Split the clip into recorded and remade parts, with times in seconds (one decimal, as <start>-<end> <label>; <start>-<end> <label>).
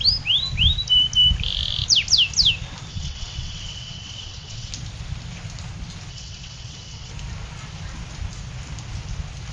0.0-2.9 recorded; 2.9-4.7 remade; 4.7-6.1 recorded; 6.1-7.1 remade; 7.1-9.5 recorded